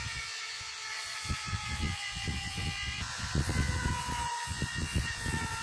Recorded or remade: remade